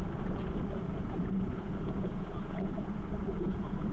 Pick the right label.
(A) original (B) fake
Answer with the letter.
B